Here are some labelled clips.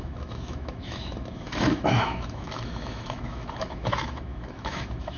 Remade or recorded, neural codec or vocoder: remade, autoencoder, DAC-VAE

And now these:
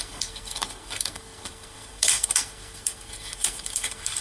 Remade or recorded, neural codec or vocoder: remade, codec, SNAC